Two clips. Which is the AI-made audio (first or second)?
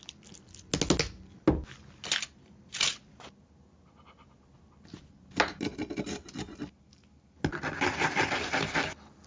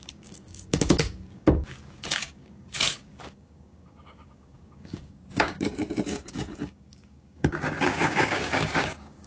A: second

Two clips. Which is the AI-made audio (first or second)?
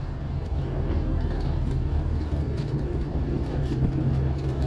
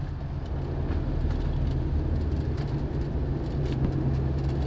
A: first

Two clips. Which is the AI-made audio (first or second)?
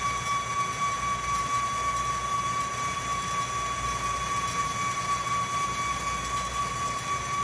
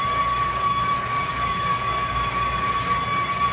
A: second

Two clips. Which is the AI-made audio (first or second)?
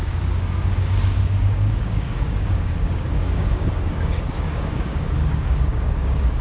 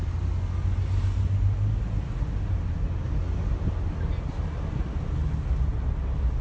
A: first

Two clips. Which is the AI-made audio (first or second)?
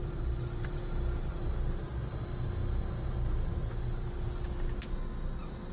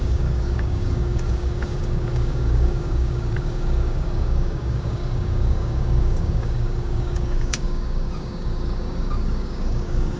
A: second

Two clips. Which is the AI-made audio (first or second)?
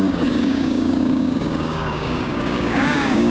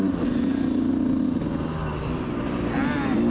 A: first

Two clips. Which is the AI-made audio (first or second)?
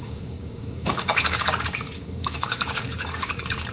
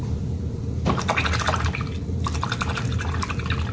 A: first